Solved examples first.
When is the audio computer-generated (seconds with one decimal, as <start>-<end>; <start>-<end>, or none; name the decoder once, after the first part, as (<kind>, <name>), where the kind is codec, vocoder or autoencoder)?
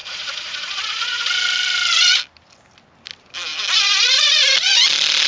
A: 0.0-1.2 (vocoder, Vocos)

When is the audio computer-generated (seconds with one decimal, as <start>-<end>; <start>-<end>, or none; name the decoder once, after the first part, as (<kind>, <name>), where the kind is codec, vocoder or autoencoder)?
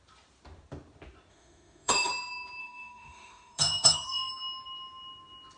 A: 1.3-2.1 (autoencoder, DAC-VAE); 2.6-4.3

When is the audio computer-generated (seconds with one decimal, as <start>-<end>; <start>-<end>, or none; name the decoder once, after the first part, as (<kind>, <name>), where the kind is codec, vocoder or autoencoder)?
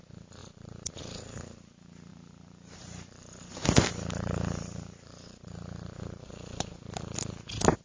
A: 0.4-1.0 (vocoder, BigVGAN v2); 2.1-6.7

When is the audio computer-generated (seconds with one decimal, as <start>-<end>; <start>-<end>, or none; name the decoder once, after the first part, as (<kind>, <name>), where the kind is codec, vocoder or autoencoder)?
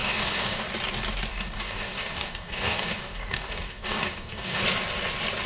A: 0.0-0.6 (codec, DAC); 1.3-4.6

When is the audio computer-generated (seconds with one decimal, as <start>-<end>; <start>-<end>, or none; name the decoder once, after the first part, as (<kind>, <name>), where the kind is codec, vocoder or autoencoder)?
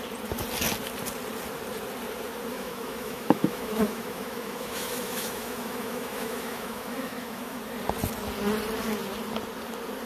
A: 2.5-7.6 (autoencoder, DAC-VAE)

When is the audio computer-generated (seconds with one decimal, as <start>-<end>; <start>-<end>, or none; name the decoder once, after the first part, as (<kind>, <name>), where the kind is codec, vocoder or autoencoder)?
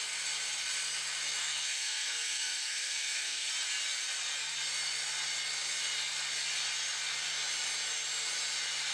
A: 1.4-3.5 (codec, SNAC)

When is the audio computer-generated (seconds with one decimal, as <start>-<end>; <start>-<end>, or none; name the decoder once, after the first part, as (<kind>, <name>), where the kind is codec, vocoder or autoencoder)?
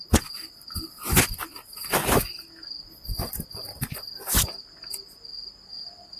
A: none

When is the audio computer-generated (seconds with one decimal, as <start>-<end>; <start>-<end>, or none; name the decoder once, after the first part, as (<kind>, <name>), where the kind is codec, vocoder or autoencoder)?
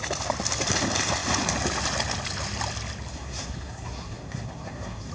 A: 3.1-5.1 (codec, SNAC)